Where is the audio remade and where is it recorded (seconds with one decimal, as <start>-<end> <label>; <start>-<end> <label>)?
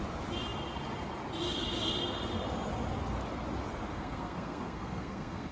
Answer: 0.0-3.9 recorded; 3.9-5.5 remade